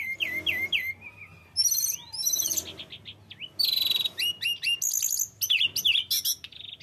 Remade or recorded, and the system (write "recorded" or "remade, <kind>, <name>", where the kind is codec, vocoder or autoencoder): recorded